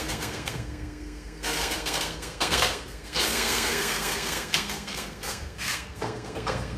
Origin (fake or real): fake